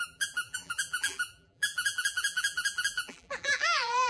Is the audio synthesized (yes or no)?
yes